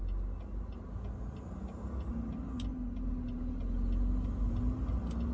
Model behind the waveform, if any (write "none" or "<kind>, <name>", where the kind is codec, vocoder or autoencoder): none